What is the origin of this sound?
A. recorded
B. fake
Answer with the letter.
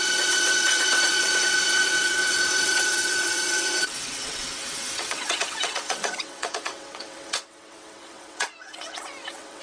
B